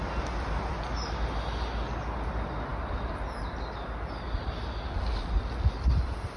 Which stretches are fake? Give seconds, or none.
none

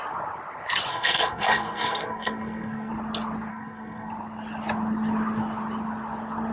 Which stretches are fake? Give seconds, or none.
0.9-2.9; 3.5-4.1

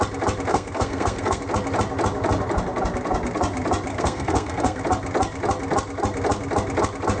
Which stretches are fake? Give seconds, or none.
0.5-1.4; 3.9-4.8